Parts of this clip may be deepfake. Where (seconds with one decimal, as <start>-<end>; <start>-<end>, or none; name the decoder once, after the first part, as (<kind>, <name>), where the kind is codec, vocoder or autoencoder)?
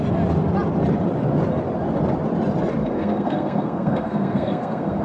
2.8-5.0 (codec, SNAC)